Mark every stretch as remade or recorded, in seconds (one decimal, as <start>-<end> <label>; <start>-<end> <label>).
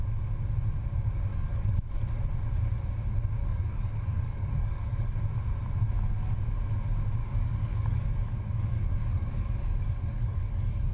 0.0-1.3 recorded; 1.3-1.9 remade; 1.9-3.4 recorded; 3.4-5.2 remade; 5.2-7.2 recorded; 7.2-10.9 remade